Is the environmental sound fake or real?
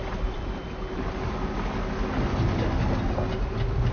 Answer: real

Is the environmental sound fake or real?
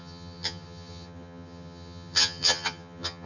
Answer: fake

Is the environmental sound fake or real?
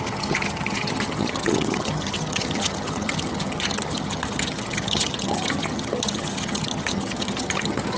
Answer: fake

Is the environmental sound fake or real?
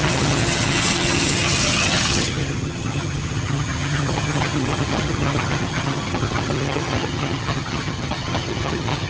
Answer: fake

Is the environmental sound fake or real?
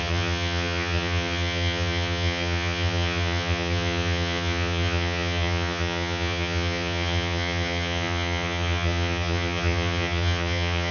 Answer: fake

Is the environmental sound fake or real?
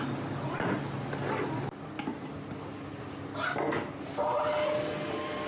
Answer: real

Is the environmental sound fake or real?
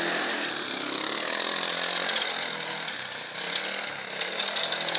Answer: real